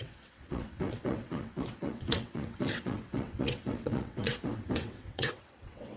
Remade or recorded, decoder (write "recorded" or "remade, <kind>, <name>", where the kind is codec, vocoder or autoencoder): remade, vocoder, WaveNeXt